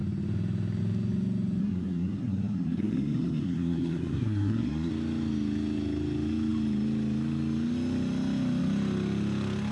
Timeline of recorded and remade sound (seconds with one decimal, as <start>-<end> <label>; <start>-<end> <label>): 0.0-1.6 recorded; 1.6-4.9 remade; 4.9-9.7 recorded